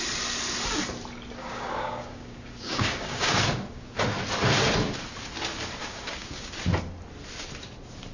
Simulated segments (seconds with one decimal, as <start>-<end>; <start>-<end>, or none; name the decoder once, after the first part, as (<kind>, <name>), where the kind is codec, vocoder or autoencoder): 1.4-3.9 (codec, DAC); 5.8-6.5